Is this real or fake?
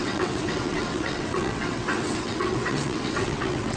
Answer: fake